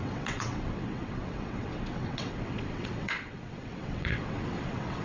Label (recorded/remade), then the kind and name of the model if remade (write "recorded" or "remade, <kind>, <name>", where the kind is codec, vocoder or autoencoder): remade, vocoder, WaveNeXt